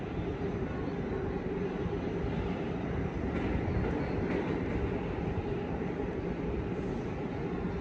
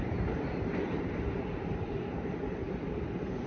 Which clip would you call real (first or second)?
first